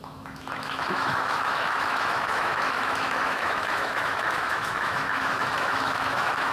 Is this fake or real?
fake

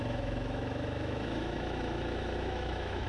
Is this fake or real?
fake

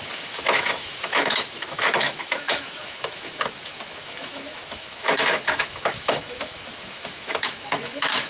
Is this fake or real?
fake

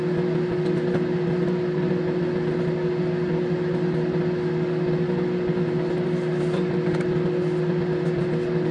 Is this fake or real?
real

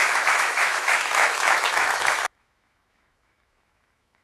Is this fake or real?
fake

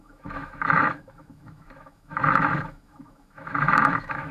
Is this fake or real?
fake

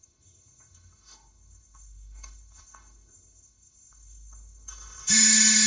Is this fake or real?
fake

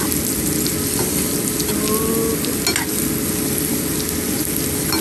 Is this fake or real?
real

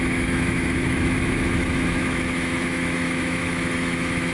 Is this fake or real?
fake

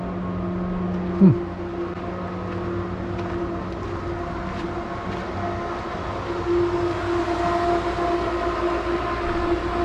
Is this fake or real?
real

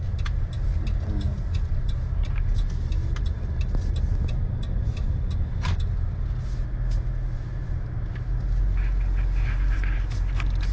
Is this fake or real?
real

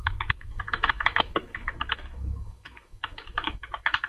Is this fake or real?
fake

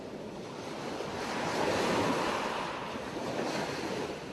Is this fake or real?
real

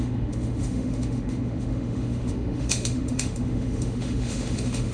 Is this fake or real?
fake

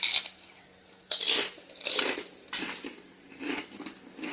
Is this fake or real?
real